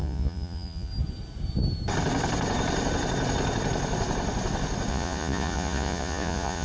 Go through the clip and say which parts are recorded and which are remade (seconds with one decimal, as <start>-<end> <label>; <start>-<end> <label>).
0.0-0.9 remade; 0.9-4.9 recorded; 4.9-6.6 remade